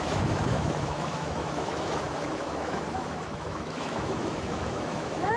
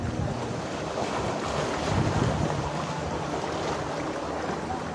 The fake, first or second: first